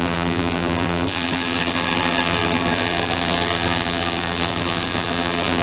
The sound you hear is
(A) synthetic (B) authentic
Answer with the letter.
A